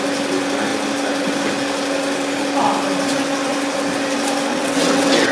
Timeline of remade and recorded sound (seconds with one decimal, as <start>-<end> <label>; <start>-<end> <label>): 0.0-4.5 recorded; 4.5-5.3 remade